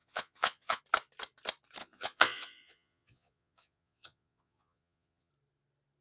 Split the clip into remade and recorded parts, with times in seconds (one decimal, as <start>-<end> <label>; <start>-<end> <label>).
0.0-0.8 remade; 0.8-1.8 recorded; 1.8-5.3 remade; 5.3-6.0 recorded